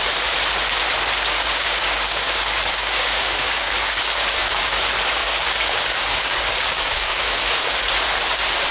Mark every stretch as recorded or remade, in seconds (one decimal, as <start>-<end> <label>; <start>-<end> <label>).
0.0-1.4 recorded; 1.4-4.8 remade; 4.8-5.2 recorded; 5.2-7.8 remade; 7.8-8.7 recorded